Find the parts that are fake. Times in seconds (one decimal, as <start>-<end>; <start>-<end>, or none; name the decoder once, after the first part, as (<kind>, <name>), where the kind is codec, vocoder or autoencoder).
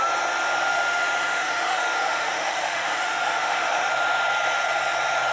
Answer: 0.7-3.9 (autoencoder, DAC-VAE)